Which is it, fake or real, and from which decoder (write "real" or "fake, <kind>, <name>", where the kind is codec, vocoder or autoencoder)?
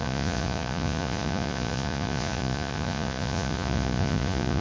fake, vocoder, Vocos